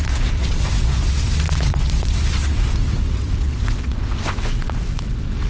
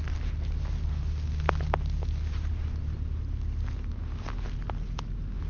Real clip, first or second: second